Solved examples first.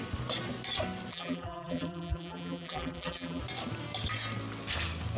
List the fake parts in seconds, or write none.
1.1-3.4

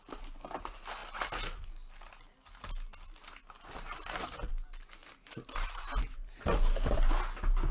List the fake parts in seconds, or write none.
5.0-6.4

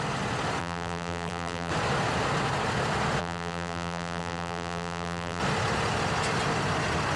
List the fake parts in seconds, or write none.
0.6-1.7; 3.2-5.4

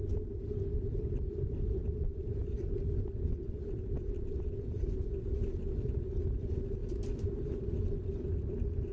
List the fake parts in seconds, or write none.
0.0-1.8; 3.4-8.9

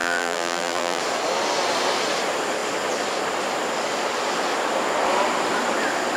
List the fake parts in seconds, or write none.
0.0-1.0

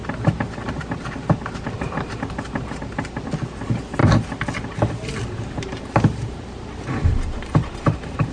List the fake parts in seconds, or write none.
0.0-8.3

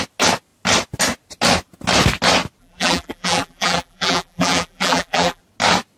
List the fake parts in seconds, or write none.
2.6-5.4